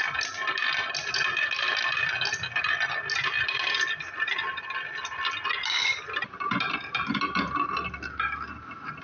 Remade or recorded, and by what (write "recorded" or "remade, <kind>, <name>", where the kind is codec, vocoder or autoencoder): recorded